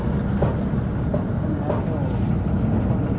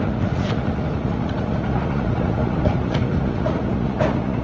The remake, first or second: second